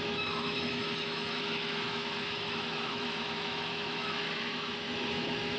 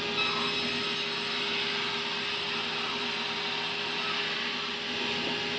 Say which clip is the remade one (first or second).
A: first